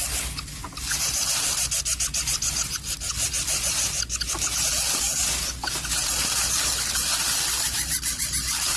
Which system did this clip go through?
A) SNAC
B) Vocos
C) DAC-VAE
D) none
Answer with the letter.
D